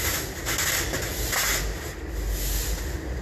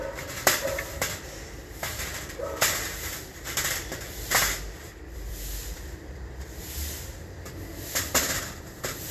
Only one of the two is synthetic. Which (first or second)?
second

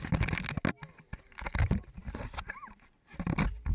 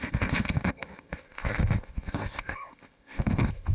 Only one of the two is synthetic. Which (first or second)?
second